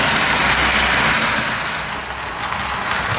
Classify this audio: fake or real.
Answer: real